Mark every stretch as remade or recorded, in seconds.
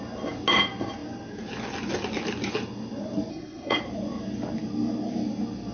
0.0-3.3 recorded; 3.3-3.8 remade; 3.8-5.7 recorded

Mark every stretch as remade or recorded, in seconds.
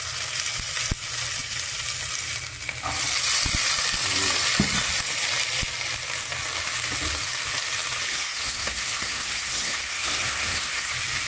0.0-8.1 recorded; 8.1-10.9 remade; 10.9-11.3 recorded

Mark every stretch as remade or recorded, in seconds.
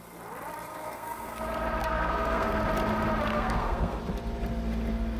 0.0-0.7 recorded; 0.7-1.4 remade; 1.4-1.8 recorded; 1.8-2.6 remade; 2.6-3.3 recorded; 3.3-4.0 remade; 4.0-5.2 recorded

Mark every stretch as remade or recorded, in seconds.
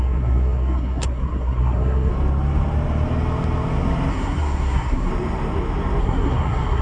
0.0-2.1 remade; 2.1-4.1 recorded; 4.1-5.1 remade; 5.1-6.0 recorded; 6.0-6.8 remade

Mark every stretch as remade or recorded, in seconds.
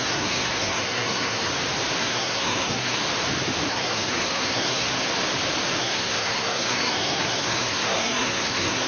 0.0-1.5 remade; 1.5-2.0 recorded; 2.0-3.0 remade; 3.0-3.7 recorded; 3.7-4.9 remade; 4.9-5.8 recorded; 5.8-8.9 remade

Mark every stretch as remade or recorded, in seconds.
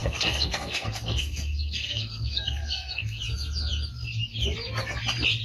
0.0-3.2 remade; 3.2-5.4 recorded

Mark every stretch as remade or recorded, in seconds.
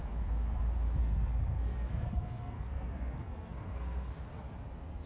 0.0-1.0 recorded; 1.0-4.1 remade; 4.1-5.1 recorded